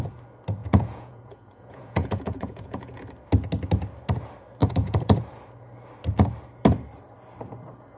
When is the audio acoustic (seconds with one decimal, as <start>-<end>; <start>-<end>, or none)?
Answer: 0.0-0.6; 3.0-4.6; 5.2-8.0

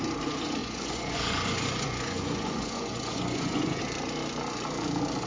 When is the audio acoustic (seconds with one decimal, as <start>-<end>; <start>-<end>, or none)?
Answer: 0.0-0.6; 3.8-5.3

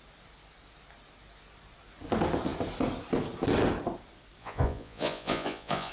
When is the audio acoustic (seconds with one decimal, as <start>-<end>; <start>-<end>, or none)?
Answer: 0.0-4.4

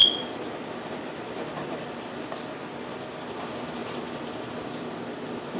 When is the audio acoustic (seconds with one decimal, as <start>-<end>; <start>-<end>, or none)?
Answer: 0.0-5.6